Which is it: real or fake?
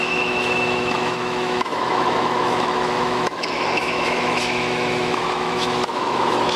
fake